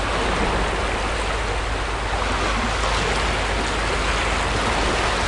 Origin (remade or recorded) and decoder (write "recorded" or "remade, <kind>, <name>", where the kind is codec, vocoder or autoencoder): recorded